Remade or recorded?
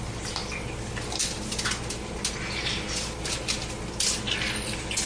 recorded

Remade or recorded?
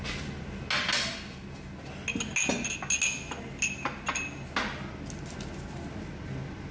recorded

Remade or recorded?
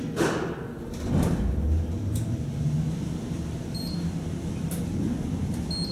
recorded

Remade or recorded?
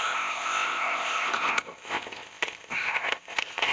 remade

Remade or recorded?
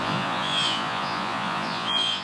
remade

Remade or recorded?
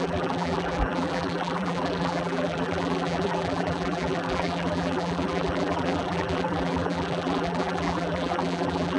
remade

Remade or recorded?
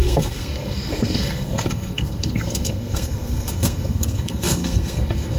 remade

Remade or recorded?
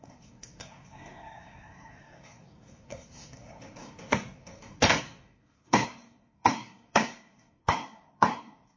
remade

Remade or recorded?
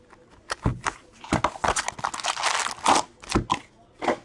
recorded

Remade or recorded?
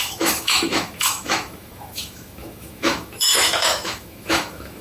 remade